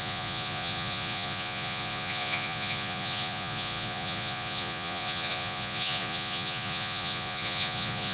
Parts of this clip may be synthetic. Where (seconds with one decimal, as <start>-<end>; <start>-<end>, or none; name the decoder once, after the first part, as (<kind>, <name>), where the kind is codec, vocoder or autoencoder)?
0.0-8.1 (vocoder, Vocos)